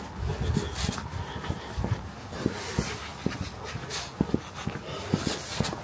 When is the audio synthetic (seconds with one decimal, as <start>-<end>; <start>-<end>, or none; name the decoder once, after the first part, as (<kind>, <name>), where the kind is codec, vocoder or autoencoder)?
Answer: none